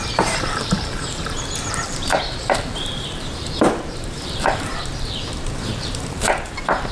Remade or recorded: remade